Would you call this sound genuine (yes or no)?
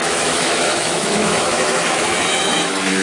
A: no